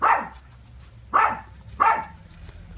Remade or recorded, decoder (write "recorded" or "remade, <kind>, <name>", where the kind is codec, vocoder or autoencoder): recorded